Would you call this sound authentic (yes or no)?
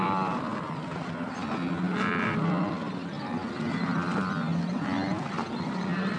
yes